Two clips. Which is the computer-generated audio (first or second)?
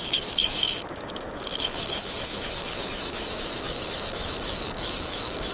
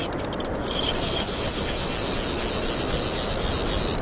first